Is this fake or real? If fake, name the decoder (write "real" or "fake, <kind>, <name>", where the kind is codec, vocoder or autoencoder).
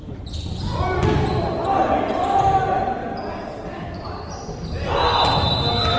real